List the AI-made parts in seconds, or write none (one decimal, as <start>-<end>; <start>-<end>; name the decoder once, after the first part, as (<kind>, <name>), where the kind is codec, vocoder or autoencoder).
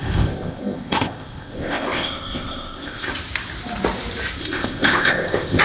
0.0-3.1 (codec, ZipCodec); 4.4-5.6